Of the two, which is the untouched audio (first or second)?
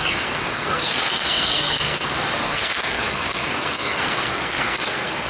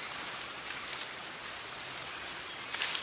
second